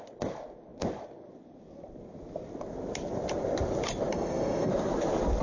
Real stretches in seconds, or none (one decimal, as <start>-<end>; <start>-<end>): 0.0-4.1; 4.7-5.4